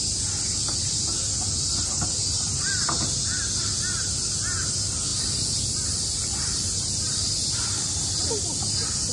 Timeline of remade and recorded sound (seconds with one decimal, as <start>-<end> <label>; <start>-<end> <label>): 0.0-2.2 recorded; 2.2-3.4 remade; 3.4-5.1 recorded; 5.1-8.3 remade; 8.3-9.1 recorded